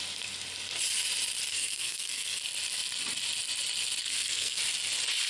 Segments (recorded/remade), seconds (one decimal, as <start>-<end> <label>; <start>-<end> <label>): 0.0-1.5 recorded; 1.5-2.4 remade; 2.4-4.0 recorded; 4.0-4.6 remade; 4.6-5.3 recorded